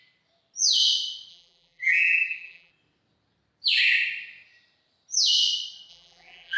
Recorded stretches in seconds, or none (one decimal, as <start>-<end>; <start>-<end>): 0.0-1.3; 2.7-5.9